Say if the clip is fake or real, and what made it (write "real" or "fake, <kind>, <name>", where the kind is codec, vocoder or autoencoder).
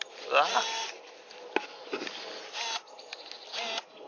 real